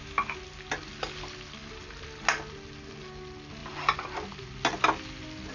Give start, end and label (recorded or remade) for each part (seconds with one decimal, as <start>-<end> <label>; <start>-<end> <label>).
0.0-5.5 recorded